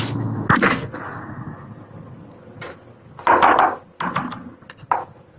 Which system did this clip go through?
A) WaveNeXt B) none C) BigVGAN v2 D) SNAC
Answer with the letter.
B